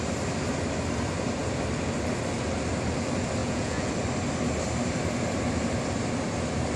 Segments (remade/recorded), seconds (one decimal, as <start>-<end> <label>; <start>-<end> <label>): 0.0-3.4 recorded; 3.4-3.9 remade; 3.9-6.8 recorded